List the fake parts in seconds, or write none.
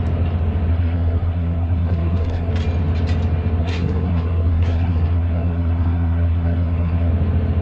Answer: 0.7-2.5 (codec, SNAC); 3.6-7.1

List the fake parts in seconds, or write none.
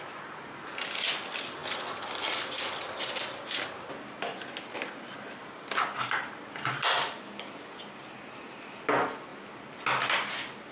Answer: none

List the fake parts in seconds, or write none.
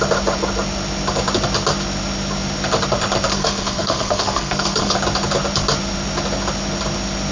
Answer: 3.3-5.0 (codec, SNAC)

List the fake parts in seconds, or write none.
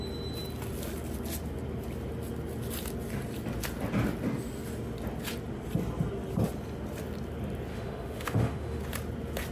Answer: 7.7-8.8 (autoencoder, DAC-VAE)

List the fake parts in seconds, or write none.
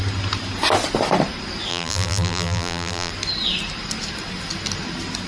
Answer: 1.7-3.1 (vocoder, BigVGAN v2)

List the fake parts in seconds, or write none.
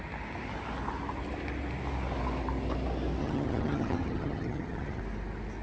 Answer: 3.2-5.0 (vocoder, HiFi-GAN)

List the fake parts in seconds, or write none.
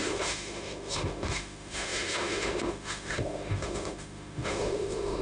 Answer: 0.0-5.2 (autoencoder, DAC-VAE)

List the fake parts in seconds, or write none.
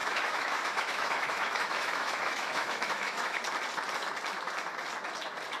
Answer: 0.0-3.4 (autoencoder, DAC-VAE)